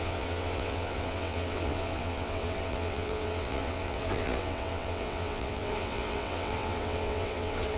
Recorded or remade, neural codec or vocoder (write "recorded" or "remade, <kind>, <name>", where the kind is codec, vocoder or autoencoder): remade, vocoder, WaveNeXt